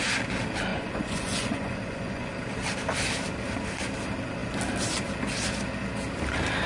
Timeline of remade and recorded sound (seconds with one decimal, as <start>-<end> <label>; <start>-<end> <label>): 0.0-0.7 recorded; 0.7-2.3 remade; 2.3-6.7 recorded